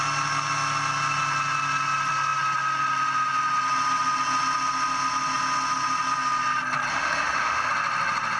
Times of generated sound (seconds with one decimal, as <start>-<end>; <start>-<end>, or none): 6.9-7.7